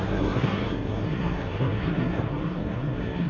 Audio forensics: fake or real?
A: fake